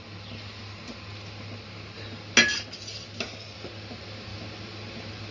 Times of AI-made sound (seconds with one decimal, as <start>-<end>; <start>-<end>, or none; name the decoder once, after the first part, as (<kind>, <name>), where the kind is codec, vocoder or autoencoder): none